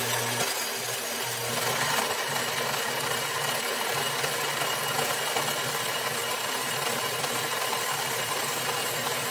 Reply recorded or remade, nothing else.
recorded